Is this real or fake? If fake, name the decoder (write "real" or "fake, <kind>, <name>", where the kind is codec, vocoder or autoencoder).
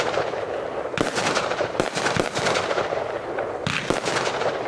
real